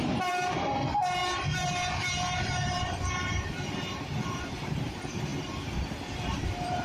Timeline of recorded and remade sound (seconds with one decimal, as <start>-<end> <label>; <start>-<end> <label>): 0.0-6.8 remade

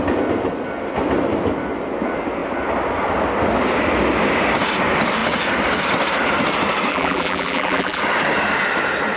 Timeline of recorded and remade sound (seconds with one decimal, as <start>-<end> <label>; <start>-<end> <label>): 0.0-6.9 recorded; 6.9-8.0 remade; 8.0-9.2 recorded

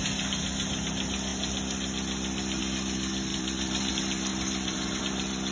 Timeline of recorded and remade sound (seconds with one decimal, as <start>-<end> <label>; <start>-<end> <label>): 0.0-3.3 recorded; 3.3-3.9 remade; 3.9-4.3 recorded; 4.3-5.0 remade; 5.0-5.5 recorded

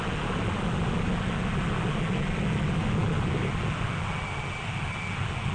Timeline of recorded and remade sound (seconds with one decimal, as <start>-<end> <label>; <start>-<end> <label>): 0.0-5.5 recorded

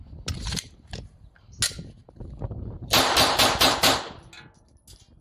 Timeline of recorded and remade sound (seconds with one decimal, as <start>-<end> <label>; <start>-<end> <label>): 0.0-0.4 recorded; 0.4-1.1 remade; 1.1-2.0 recorded; 2.0-4.0 remade; 4.0-5.2 recorded

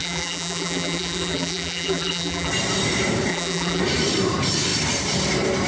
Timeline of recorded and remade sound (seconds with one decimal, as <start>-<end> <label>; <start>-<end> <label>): 0.0-2.5 remade; 2.5-3.3 recorded; 3.3-3.8 remade; 3.8-5.7 recorded

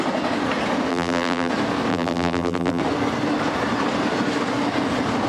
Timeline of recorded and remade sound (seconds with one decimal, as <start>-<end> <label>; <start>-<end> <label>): 0.0-0.9 recorded; 0.9-1.5 remade; 1.5-1.9 recorded; 1.9-2.8 remade; 2.8-5.3 recorded